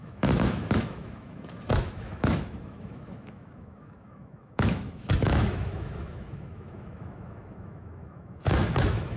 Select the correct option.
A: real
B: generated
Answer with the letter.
B